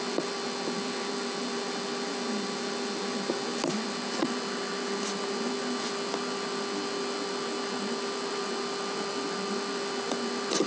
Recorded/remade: recorded